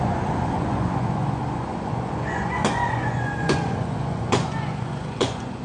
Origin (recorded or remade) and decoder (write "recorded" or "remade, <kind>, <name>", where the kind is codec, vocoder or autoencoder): remade, vocoder, Vocos